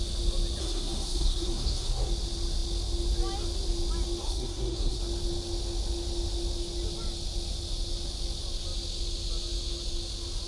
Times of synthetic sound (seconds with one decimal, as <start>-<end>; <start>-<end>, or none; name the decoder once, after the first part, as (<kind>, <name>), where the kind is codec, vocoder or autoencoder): 0.6-2.1 (codec, SNAC); 4.2-5.0